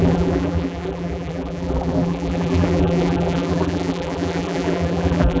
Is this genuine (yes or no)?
no